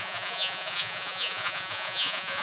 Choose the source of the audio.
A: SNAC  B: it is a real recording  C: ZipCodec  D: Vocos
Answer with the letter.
D